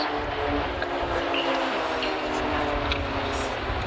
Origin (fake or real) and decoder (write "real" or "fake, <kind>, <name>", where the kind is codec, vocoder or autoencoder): real